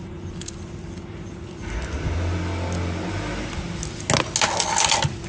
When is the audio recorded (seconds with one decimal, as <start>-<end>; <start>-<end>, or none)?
0.0-5.3